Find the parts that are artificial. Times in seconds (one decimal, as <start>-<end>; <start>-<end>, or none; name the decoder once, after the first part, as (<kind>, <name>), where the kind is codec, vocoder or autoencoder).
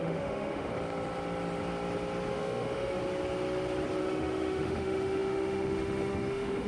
0.0-0.7 (autoencoder, DAC-VAE); 2.3-3.0; 4.0-6.7